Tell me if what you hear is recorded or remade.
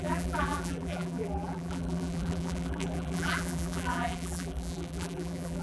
remade